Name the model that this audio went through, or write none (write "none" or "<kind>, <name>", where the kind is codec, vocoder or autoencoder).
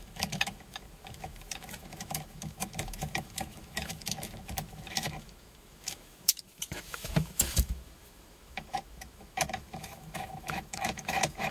autoencoder, DAC-VAE